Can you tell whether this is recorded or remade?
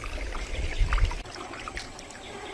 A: recorded